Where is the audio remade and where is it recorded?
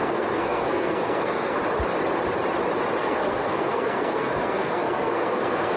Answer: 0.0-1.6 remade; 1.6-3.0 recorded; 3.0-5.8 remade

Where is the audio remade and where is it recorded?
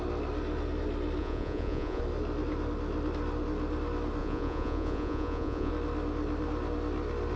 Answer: 0.0-1.2 recorded; 1.2-2.0 remade; 2.0-4.2 recorded; 4.2-5.7 remade; 5.7-7.4 recorded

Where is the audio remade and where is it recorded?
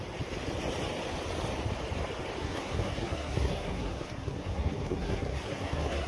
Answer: 0.0-2.4 recorded; 2.4-6.1 remade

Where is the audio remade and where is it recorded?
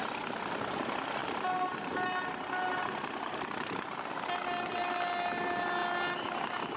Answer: 0.0-6.8 recorded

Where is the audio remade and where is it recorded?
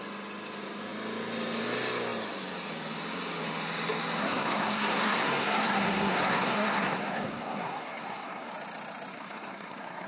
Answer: 0.0-4.2 recorded; 4.2-8.5 remade; 8.5-9.1 recorded; 9.1-10.1 remade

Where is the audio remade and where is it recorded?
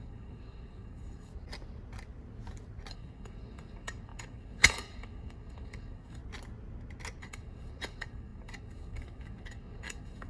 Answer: 0.0-1.3 remade; 1.3-2.9 recorded; 2.9-6.2 remade; 6.2-7.2 recorded; 7.2-10.3 remade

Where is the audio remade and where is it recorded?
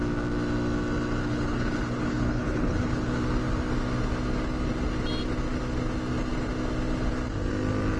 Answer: 0.0-1.2 recorded; 1.2-3.2 remade; 3.2-8.0 recorded